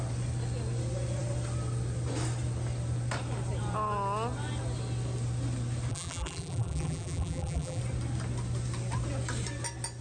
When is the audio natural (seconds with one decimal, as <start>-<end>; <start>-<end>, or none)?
0.0-5.9; 7.8-10.0